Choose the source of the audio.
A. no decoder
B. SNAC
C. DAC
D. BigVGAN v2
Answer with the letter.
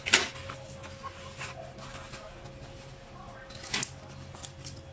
A